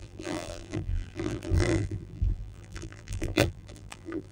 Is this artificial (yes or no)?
yes